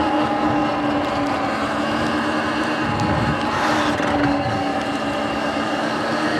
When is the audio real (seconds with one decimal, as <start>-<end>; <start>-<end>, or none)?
0.6-4.1; 4.7-5.3